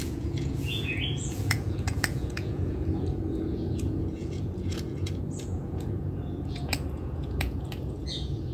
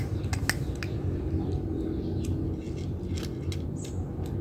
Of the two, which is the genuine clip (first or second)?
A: second